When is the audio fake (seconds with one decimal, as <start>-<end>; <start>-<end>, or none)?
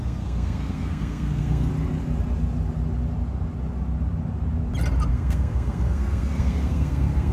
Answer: 0.0-1.7; 5.1-7.3